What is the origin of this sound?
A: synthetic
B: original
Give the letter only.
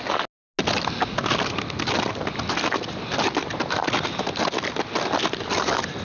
B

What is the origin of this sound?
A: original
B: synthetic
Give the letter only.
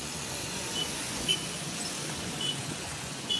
B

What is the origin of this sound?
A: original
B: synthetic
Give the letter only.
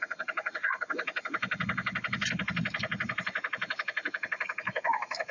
A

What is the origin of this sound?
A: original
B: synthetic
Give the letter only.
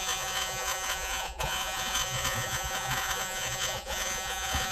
B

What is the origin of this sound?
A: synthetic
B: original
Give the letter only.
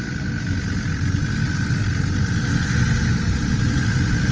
B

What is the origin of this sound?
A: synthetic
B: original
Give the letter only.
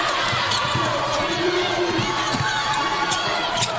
A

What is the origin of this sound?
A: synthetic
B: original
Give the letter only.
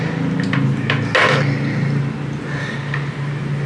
B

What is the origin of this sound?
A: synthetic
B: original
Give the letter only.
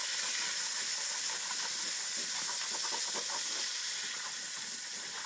B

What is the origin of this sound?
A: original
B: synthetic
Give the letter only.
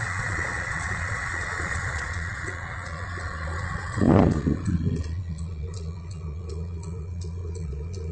B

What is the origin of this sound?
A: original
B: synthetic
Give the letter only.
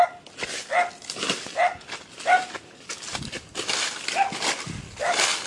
A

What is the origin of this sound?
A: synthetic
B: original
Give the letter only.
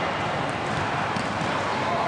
B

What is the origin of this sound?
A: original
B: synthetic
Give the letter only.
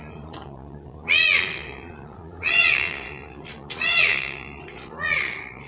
B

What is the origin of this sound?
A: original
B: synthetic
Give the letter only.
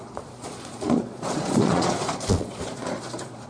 B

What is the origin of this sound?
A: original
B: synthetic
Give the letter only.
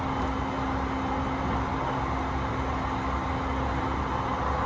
A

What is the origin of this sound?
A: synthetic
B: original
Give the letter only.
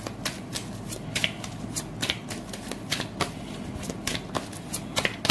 B